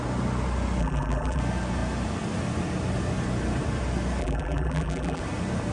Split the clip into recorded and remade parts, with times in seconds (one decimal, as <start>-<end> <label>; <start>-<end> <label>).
0.0-0.8 recorded; 0.8-1.4 remade; 1.4-4.2 recorded; 4.2-5.2 remade; 5.2-5.7 recorded